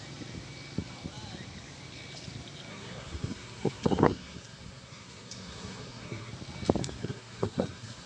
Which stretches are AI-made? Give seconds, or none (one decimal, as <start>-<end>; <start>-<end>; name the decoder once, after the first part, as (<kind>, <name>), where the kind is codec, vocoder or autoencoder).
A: 2.7-6.3 (codec, SNAC); 6.8-8.1